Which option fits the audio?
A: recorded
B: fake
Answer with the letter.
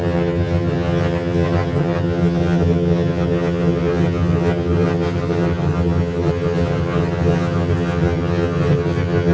B